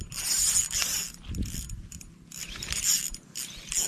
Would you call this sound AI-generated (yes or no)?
no